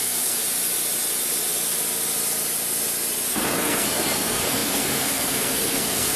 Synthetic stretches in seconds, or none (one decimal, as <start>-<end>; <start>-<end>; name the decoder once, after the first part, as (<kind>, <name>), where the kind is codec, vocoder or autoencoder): 0.0-0.4 (codec, SNAC); 3.3-6.2